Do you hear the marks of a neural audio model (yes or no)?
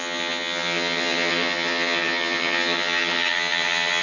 yes